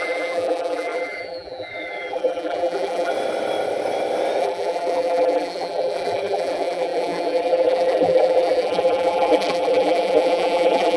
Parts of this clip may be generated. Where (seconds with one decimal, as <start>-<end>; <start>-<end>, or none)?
0.0-3.1; 4.4-11.0